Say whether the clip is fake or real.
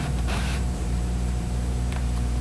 fake